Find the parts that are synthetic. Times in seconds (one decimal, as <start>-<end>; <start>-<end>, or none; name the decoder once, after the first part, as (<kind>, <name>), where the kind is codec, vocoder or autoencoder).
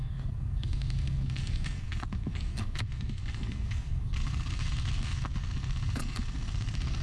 0.0-7.0 (codec, SNAC)